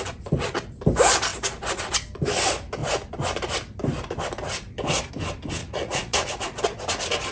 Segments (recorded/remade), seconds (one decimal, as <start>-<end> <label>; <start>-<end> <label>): 0.0-5.6 recorded; 5.6-6.6 remade; 6.6-7.3 recorded